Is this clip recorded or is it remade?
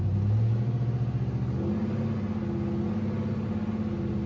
recorded